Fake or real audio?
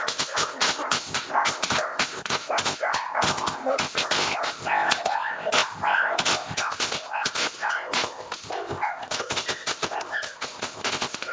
fake